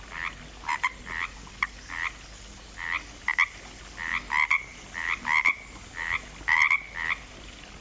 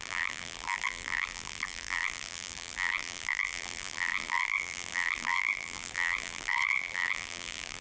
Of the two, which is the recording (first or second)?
first